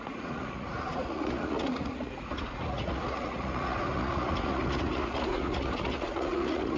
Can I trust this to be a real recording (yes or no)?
no